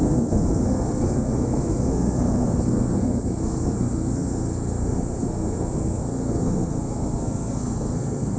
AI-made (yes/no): yes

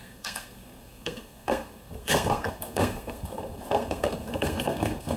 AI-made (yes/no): yes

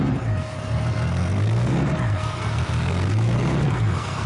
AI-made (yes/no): yes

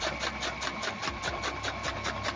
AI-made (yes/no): no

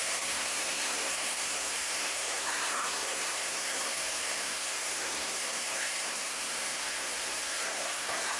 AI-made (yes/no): yes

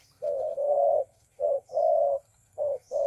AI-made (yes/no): yes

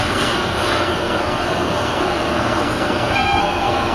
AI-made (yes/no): yes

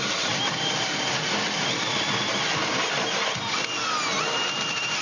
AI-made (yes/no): no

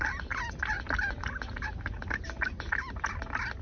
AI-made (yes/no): no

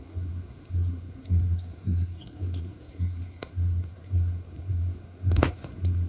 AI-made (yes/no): yes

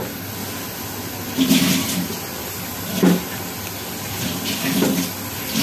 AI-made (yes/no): no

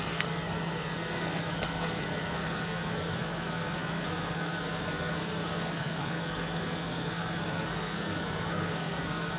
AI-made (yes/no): yes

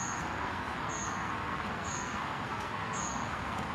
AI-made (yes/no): yes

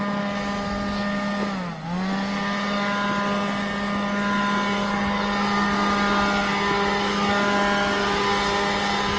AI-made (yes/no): no